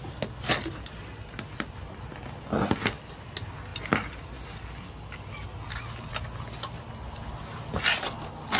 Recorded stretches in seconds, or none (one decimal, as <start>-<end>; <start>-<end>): 0.0-8.6